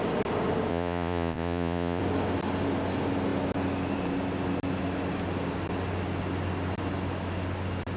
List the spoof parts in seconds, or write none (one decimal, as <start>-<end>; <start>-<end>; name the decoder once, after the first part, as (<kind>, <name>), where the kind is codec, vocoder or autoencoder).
0.7-2.0 (vocoder, Vocos)